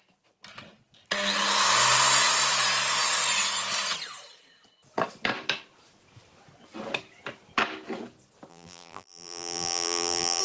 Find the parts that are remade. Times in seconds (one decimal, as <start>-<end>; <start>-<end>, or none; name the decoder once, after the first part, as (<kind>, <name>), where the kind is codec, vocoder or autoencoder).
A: 8.5-10.4 (vocoder, BigVGAN v2)